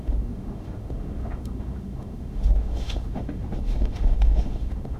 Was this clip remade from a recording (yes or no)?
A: yes